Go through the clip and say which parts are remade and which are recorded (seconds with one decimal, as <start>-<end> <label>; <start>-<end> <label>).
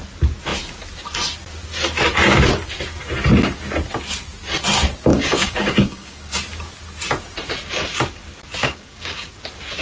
0.0-5.1 recorded; 5.1-6.4 remade; 6.4-8.6 recorded; 8.6-9.3 remade; 9.3-9.8 recorded